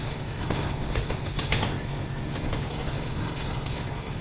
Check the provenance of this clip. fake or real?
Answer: fake